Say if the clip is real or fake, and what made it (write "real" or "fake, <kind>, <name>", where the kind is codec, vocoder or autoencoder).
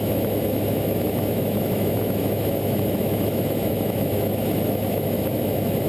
fake, autoencoder, DAC-VAE